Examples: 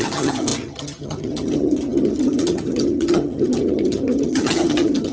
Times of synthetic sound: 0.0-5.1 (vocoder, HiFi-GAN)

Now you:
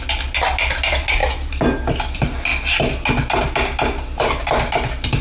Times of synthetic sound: none

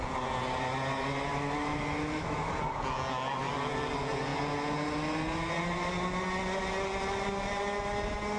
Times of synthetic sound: 1.3-2.5 (autoencoder, DAC-VAE)

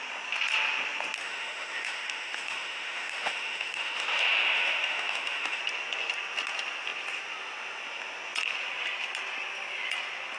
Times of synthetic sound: 1.2-5.6 (autoencoder, DAC-VAE)

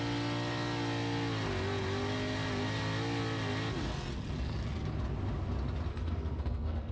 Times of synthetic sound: 5.9-6.9 (codec, SNAC)

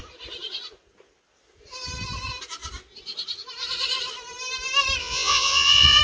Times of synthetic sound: 5.0-6.0 (vocoder, Vocos)